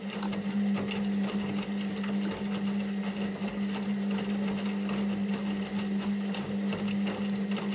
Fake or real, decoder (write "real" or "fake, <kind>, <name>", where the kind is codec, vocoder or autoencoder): real